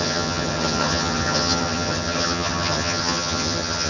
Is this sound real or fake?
fake